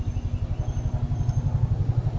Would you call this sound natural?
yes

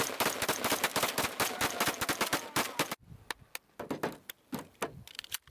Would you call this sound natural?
yes